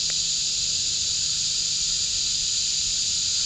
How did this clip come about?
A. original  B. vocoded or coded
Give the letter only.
A